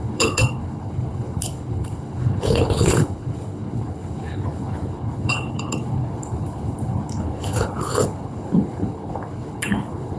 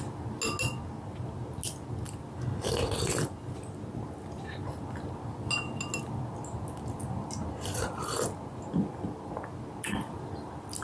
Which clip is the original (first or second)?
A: second